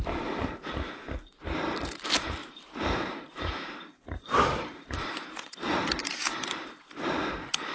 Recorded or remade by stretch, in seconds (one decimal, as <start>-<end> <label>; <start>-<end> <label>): 0.0-2.4 recorded; 2.4-5.1 remade; 5.1-6.0 recorded; 6.0-6.7 remade; 6.7-7.7 recorded